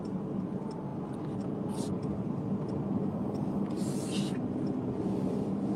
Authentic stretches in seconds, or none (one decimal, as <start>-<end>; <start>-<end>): 0.0-0.9; 1.9-5.8